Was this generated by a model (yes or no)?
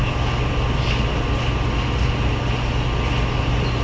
no